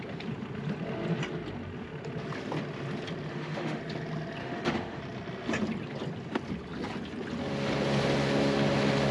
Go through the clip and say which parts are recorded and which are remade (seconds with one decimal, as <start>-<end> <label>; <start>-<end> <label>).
0.0-3.3 recorded; 3.3-3.8 remade; 3.8-4.4 recorded; 4.4-5.0 remade; 5.0-9.1 recorded